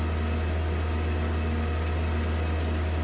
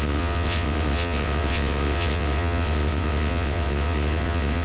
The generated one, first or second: second